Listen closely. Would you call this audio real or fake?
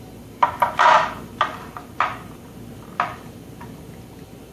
real